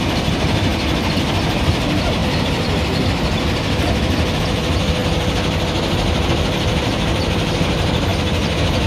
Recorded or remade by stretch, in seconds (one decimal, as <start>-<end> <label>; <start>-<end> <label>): 0.0-0.7 remade; 0.7-1.3 recorded; 1.3-5.0 remade; 5.0-6.3 recorded; 6.3-8.1 remade; 8.1-8.9 recorded